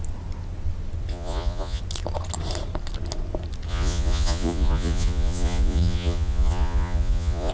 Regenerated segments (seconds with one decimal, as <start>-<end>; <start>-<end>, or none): 1.1-1.8; 3.7-7.5